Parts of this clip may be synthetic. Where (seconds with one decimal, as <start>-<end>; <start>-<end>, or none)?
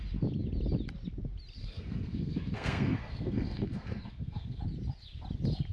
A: 1.6-4.6